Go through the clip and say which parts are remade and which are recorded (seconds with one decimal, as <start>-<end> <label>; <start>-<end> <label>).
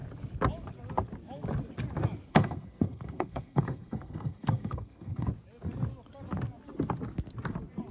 0.0-2.3 recorded; 2.3-5.3 remade; 5.3-7.9 recorded